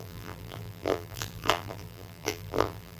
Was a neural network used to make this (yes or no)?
yes